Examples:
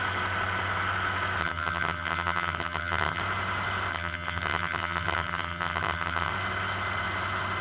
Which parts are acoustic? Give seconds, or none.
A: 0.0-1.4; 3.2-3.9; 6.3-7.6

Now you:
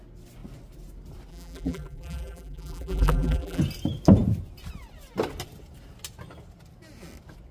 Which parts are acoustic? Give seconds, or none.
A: 0.0-1.3; 3.6-7.5

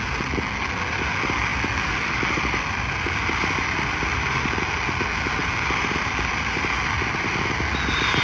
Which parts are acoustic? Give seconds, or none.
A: 0.0-8.2

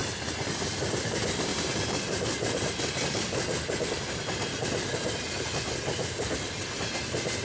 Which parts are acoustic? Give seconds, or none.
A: 0.0-1.5; 4.0-4.6; 5.2-7.4

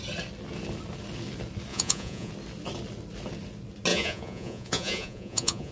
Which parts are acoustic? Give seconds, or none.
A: 0.0-1.7; 2.3-3.9

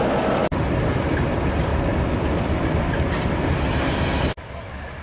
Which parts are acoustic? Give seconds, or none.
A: 0.0-5.0

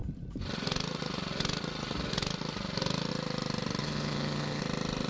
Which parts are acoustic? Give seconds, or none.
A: 0.0-3.8; 4.6-5.1